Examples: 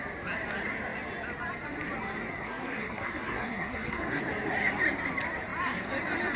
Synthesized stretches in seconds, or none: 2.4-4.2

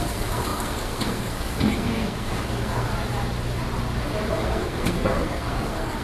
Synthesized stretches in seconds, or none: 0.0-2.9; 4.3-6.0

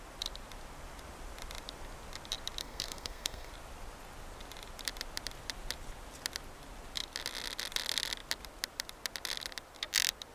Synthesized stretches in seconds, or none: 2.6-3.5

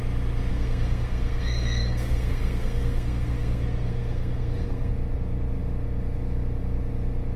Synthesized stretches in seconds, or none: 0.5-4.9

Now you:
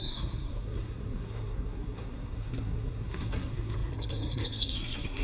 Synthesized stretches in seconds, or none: 0.0-5.2